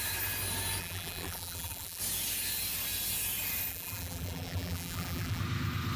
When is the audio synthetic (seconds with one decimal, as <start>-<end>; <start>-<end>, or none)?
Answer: 0.8-2.0; 3.7-5.4

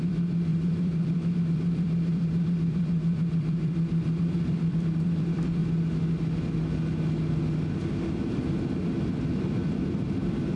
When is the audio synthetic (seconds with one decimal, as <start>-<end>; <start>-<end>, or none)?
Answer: 0.0-5.6; 9.8-10.6

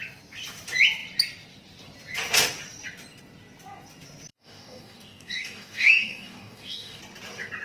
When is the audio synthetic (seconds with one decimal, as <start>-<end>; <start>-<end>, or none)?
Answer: 4.3-7.0

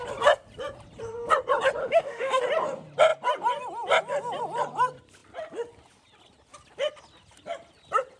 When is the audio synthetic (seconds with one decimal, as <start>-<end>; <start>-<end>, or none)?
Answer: 1.8-2.4

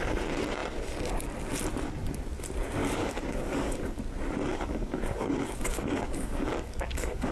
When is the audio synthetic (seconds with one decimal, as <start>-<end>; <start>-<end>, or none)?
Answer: 2.8-4.0; 4.5-7.3

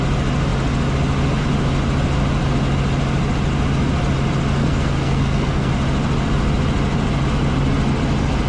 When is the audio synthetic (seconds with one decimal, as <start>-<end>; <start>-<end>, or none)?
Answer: 4.6-5.7

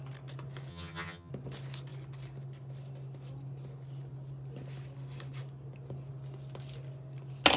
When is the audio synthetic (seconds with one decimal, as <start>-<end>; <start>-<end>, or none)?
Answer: 0.7-1.3